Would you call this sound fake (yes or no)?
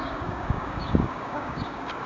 yes